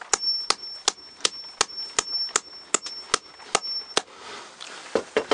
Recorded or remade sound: recorded